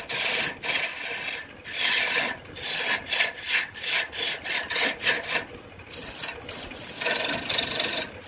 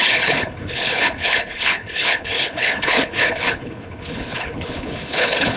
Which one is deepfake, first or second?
second